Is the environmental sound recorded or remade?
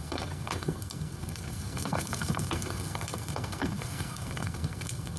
remade